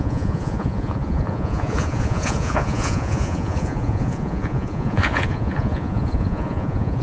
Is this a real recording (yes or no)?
no